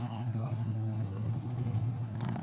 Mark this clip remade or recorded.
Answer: remade